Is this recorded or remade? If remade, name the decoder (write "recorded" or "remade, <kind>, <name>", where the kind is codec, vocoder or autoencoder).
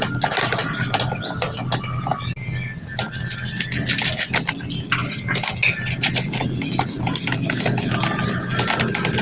recorded